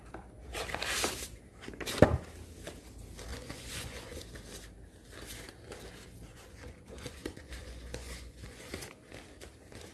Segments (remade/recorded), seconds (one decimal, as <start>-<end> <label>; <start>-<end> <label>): 0.0-3.3 recorded; 3.3-4.2 remade; 4.2-6.3 recorded; 6.3-8.7 remade; 8.7-9.9 recorded